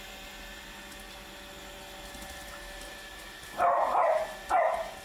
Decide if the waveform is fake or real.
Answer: real